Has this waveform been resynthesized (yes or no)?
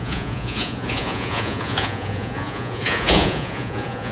yes